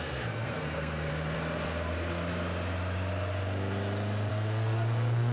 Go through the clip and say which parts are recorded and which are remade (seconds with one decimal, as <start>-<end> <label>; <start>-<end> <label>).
0.0-1.1 remade; 1.1-4.3 recorded; 4.3-5.3 remade